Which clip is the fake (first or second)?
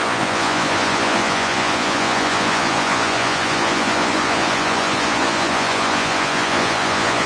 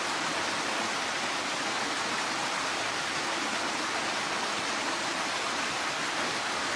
first